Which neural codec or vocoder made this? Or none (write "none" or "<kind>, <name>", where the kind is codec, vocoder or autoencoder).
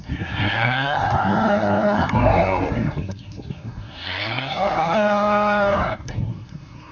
codec, SNAC